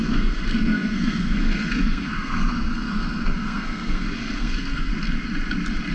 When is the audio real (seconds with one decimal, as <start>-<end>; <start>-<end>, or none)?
4.9-5.9